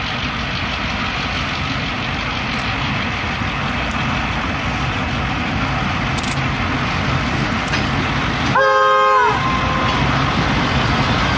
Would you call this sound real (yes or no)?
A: yes